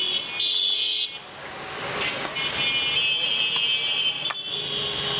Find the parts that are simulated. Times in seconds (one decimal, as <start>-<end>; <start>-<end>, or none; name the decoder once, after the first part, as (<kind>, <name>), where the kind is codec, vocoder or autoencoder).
none